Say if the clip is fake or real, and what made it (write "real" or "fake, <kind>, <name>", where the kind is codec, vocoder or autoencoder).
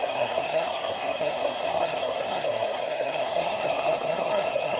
fake, codec, SNAC